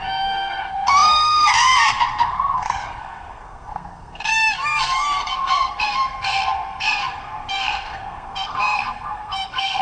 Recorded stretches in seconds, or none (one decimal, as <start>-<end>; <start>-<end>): none